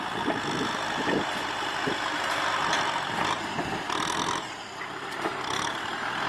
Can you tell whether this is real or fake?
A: real